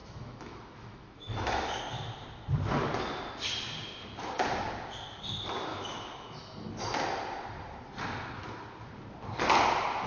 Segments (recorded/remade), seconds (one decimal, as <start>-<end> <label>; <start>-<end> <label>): 0.0-1.8 remade; 1.8-5.7 recorded; 5.7-6.7 remade; 6.7-10.1 recorded